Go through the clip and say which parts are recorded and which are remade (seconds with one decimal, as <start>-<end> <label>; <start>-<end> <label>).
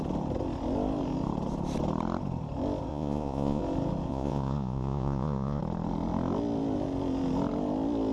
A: 0.0-2.9 recorded; 2.9-3.6 remade; 3.6-4.1 recorded; 4.1-5.6 remade; 5.6-8.1 recorded